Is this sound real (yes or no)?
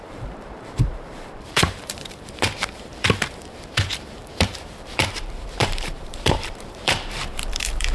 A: no